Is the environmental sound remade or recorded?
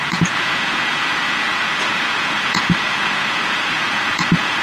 remade